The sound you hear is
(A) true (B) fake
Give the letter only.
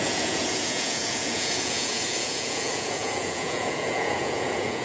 B